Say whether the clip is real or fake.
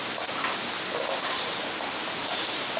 real